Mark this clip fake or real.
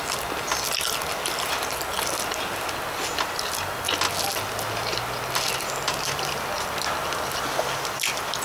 real